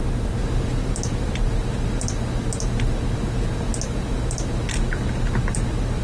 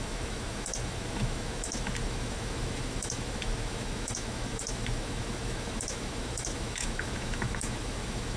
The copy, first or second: second